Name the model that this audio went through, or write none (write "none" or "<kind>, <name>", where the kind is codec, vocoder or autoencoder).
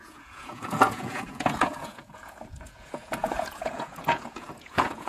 vocoder, Vocos